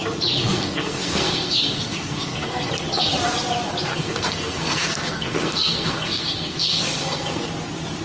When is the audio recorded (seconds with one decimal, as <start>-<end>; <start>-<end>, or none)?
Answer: 0.0-0.4; 2.7-3.9; 7.5-8.0